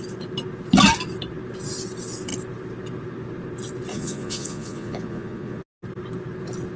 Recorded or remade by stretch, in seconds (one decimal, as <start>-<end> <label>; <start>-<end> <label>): 0.0-3.9 recorded; 3.9-5.6 remade; 5.6-6.8 recorded